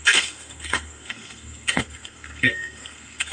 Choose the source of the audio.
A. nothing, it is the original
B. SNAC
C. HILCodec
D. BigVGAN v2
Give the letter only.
B